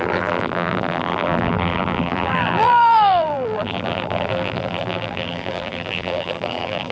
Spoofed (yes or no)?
yes